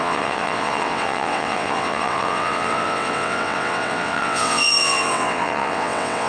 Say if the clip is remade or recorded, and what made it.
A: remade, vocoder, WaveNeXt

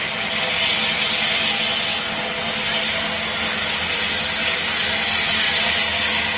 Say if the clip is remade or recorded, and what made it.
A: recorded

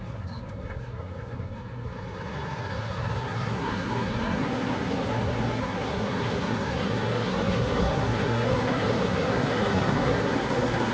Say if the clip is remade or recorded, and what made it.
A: remade, codec, SNAC